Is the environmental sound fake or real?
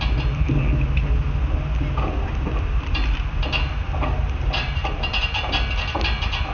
real